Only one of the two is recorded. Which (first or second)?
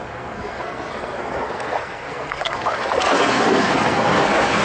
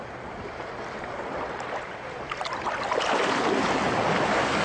second